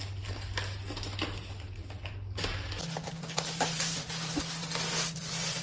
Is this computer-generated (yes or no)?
no